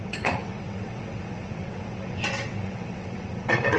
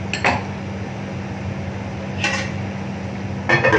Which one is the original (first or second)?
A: second